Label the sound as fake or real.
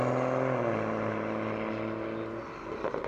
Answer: real